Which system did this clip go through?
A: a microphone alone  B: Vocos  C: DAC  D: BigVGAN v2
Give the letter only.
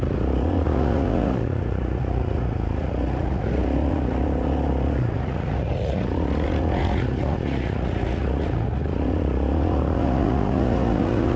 B